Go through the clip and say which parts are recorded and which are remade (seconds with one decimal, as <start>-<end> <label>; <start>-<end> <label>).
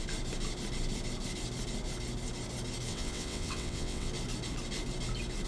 0.0-2.9 recorded; 2.9-4.1 remade; 4.1-5.5 recorded